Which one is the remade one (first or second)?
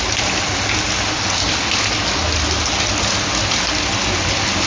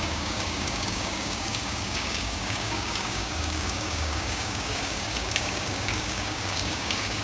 second